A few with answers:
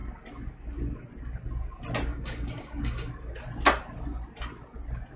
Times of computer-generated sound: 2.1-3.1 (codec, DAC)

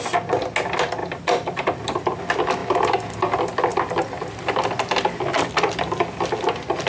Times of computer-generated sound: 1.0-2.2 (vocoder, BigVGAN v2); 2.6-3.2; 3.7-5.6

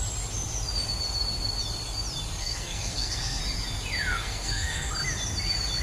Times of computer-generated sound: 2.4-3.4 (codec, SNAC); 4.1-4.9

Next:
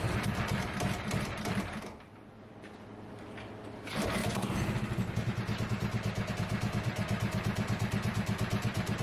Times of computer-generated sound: 0.0-4.2 (vocoder, BigVGAN v2); 6.3-9.0

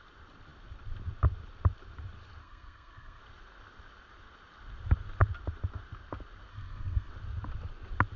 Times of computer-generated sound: 2.4-3.2 (codec, SNAC); 6.5-7.1